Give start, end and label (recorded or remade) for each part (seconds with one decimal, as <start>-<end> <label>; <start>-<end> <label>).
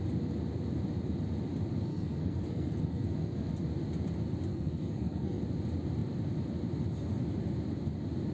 0.0-1.9 recorded; 1.9-3.5 remade; 3.5-4.5 recorded; 4.5-5.4 remade; 5.4-8.3 recorded